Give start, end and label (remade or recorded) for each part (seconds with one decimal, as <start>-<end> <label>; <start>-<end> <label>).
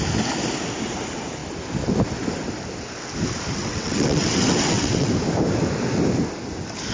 0.0-3.6 recorded; 3.6-5.1 remade; 5.1-6.9 recorded